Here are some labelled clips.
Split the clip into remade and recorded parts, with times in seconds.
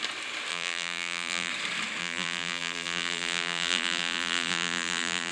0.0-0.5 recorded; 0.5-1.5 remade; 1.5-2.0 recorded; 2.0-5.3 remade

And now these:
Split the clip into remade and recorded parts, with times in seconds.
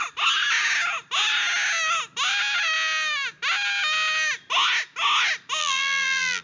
0.0-5.6 recorded; 5.6-6.4 remade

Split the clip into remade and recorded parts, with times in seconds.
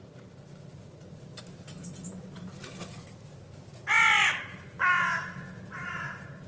0.0-6.5 recorded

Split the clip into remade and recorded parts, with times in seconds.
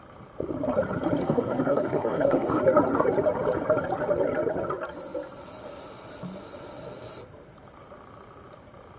0.0-1.2 recorded; 1.2-2.6 remade; 2.6-9.0 recorded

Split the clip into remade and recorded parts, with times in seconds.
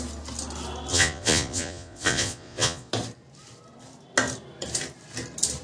0.0-0.9 recorded; 0.9-2.9 remade; 2.9-5.6 recorded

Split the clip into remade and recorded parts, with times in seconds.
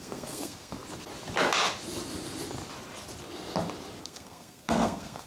0.0-0.8 remade; 0.8-4.0 recorded; 4.0-5.3 remade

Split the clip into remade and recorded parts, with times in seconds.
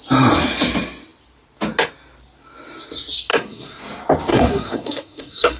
0.0-3.3 recorded; 3.3-3.8 remade; 3.8-4.3 recorded; 4.3-5.6 remade